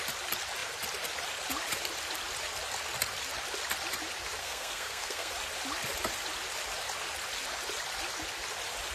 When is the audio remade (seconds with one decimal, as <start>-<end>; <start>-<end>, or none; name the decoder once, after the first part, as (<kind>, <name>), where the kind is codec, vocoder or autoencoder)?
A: 4.4-5.3 (codec, SNAC)